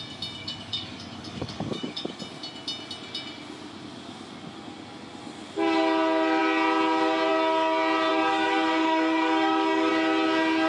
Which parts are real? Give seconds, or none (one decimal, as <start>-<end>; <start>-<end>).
0.0-0.4; 2.2-8.1; 9.9-10.7